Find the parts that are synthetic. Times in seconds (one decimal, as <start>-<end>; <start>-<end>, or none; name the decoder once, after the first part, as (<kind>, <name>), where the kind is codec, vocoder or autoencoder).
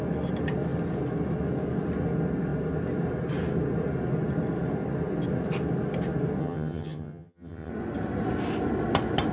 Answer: 6.4-7.7 (vocoder, HiFi-GAN)